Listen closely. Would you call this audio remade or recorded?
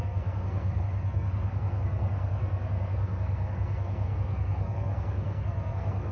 remade